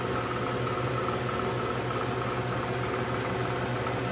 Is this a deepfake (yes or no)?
no